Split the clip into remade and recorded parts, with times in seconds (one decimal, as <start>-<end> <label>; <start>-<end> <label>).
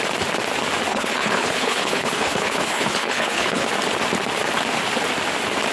0.0-0.9 recorded; 0.9-3.7 remade; 3.7-5.7 recorded